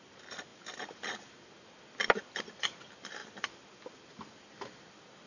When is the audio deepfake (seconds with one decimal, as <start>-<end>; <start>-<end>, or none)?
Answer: none